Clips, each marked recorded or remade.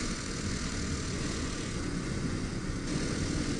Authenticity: remade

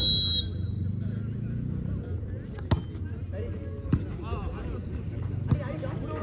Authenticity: recorded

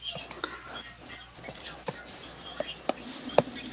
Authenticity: recorded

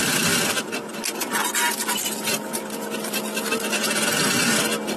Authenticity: recorded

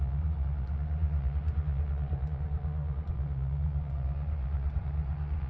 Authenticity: remade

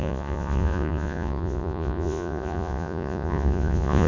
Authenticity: remade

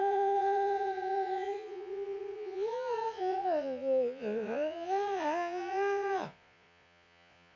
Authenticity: remade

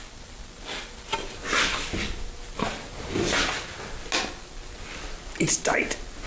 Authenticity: recorded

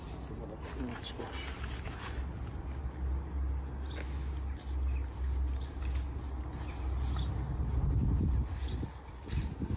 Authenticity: recorded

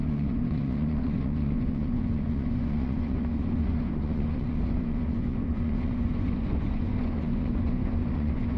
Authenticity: remade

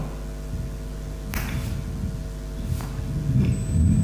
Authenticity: recorded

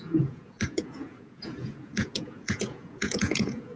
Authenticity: remade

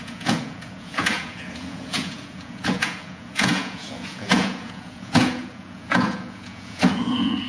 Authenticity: remade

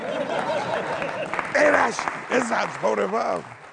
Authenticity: recorded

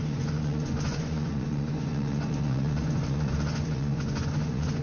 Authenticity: remade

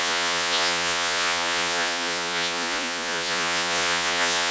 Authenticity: remade